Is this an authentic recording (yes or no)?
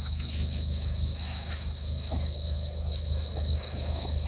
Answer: no